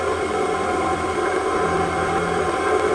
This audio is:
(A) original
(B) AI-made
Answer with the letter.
A